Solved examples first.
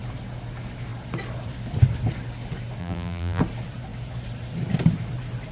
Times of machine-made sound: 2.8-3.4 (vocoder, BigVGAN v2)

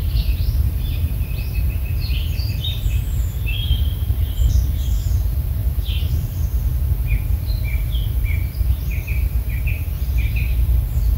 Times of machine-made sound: 0.0-5.6 (vocoder, BigVGAN v2); 6.1-8.9; 9.7-11.2